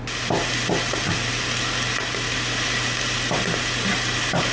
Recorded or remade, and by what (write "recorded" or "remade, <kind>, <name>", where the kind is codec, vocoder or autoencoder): recorded